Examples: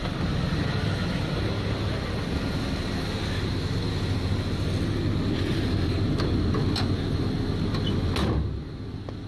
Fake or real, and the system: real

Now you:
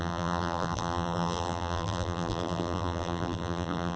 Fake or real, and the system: fake, vocoder, BigVGAN v2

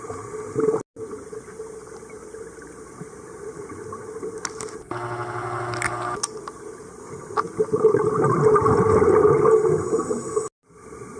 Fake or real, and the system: real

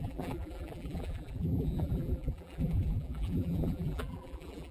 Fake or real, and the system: fake, vocoder, BigVGAN v2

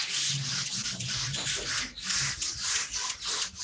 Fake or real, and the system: real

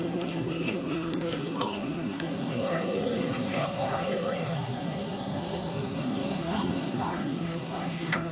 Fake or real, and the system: fake, codec, SNAC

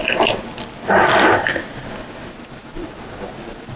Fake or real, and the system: real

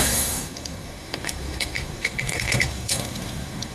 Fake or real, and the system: fake, codec, SNAC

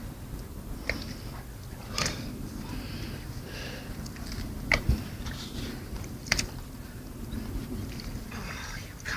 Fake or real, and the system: real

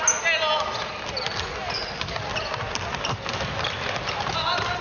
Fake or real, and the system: real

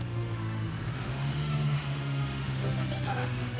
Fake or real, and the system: fake, autoencoder, DAC-VAE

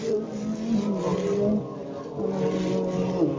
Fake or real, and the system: real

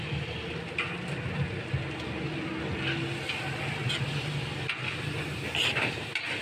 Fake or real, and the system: real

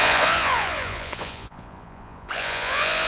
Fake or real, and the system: fake, vocoder, Vocos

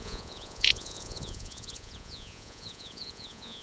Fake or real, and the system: fake, vocoder, Vocos